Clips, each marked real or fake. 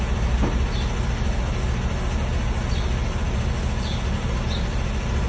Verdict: real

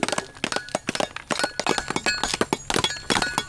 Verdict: real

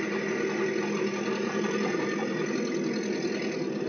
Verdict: real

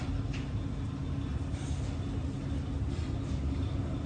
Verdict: real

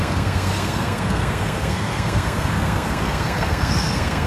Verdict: fake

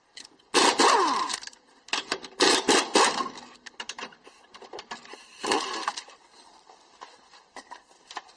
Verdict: real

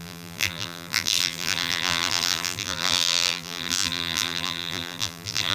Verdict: fake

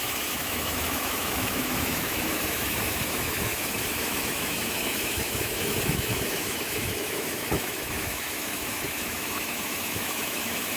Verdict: fake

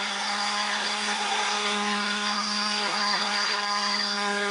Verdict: fake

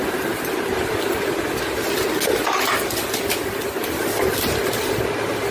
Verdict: real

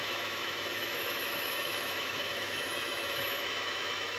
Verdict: fake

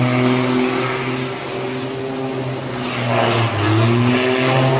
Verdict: real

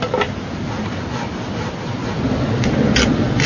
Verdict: real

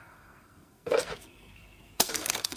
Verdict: fake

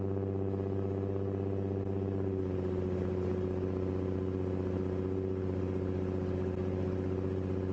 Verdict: real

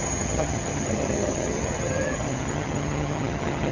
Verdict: fake